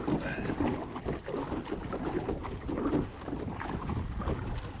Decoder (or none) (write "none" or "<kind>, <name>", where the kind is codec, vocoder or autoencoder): none